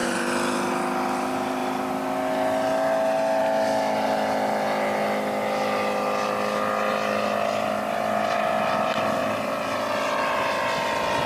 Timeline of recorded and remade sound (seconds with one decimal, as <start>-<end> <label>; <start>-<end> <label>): 0.0-0.7 remade; 0.7-11.3 recorded